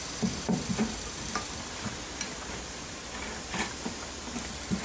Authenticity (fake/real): real